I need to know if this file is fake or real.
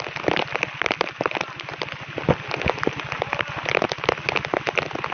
real